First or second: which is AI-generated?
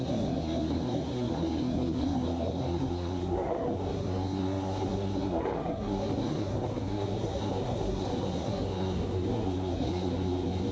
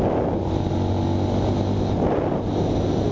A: first